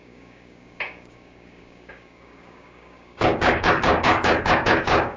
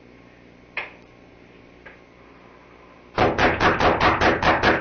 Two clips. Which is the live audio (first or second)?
second